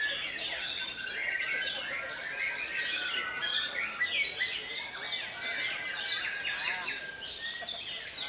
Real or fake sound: real